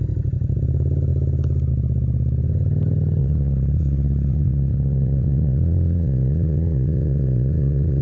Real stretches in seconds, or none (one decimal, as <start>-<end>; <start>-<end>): 0.0-3.2